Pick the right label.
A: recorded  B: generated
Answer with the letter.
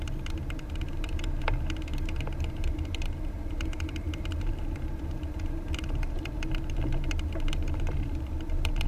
B